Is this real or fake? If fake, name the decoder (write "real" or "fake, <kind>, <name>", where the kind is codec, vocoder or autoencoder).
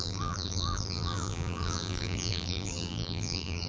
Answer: fake, vocoder, BigVGAN v2